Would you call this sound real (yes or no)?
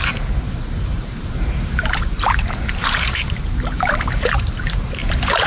no